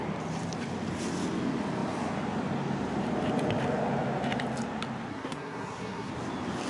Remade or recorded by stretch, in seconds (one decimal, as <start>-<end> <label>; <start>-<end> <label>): 0.0-5.1 recorded; 5.1-6.1 remade; 6.1-6.7 recorded